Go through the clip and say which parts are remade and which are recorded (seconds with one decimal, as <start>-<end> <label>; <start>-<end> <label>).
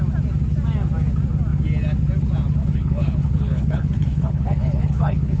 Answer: 0.0-2.6 recorded; 2.6-5.4 remade